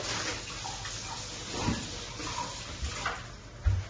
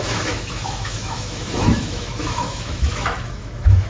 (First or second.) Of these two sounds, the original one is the first